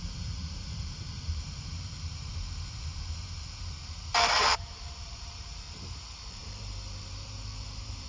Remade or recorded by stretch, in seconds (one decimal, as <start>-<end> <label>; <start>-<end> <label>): 0.0-8.1 remade